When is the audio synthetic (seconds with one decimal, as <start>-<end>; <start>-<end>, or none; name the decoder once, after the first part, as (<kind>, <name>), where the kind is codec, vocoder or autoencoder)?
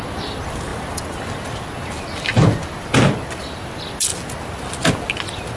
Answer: none